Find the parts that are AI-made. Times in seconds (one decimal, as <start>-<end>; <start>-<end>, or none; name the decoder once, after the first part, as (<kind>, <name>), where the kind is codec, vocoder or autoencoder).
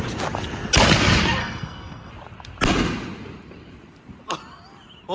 1.4-2.1 (codec, SNAC)